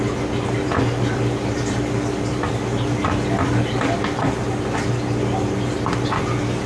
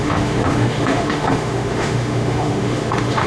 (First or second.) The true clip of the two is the first